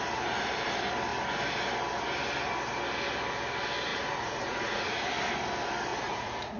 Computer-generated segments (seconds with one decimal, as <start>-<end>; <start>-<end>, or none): 3.9-5.0; 5.9-6.6